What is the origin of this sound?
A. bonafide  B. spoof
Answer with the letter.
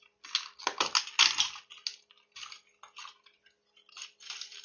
A